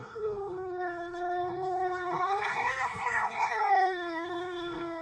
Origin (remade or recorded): remade